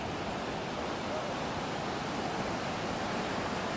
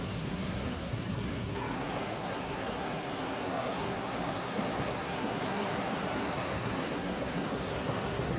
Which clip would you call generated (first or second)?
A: second